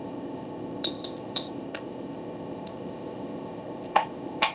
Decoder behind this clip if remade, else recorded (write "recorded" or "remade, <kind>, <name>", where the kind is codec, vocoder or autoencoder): remade, codec, ZipCodec